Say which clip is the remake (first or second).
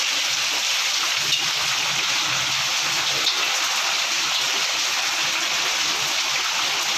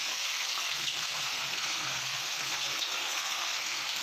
second